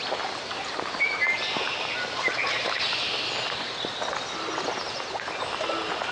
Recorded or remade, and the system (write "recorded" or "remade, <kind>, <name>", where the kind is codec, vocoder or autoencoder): recorded